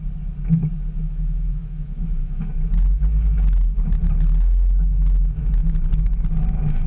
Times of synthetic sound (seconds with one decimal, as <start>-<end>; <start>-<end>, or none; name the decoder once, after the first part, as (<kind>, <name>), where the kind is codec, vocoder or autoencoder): 1.0-2.4 (autoencoder, DAC-VAE)